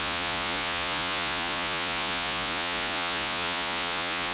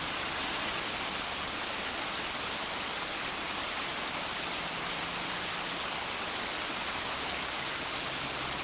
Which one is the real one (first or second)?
second